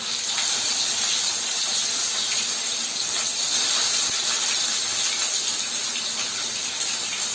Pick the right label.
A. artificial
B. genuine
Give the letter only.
B